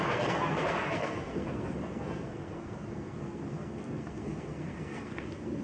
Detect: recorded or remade remade